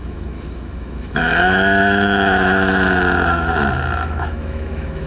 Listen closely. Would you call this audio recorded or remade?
remade